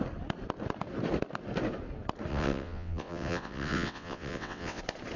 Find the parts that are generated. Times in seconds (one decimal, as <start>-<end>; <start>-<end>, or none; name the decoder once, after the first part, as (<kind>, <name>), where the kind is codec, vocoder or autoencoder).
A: 2.3-4.8 (vocoder, WaveNeXt)